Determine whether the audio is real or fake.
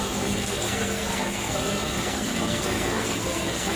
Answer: fake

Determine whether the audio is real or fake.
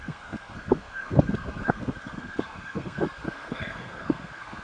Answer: fake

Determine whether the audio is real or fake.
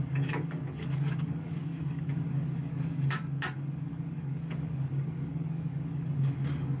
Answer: fake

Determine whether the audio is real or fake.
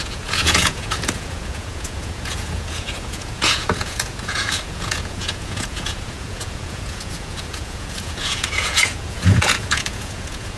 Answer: fake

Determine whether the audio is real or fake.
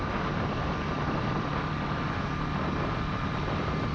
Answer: real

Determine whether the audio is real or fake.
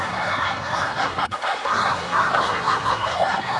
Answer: fake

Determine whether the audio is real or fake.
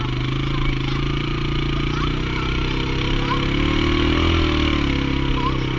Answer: real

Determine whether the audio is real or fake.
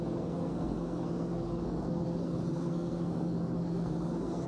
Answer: fake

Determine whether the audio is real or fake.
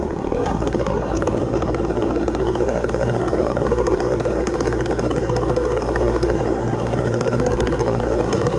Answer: fake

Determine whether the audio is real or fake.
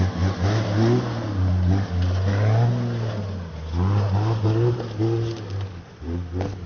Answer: real